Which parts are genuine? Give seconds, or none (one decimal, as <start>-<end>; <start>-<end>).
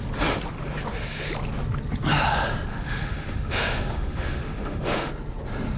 0.0-2.7; 5.1-5.8